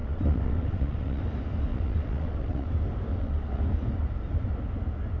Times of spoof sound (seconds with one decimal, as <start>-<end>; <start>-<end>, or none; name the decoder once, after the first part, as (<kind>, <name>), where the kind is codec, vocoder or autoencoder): 0.0-1.2 (vocoder, WaveNeXt); 1.7-2.7; 3.1-3.6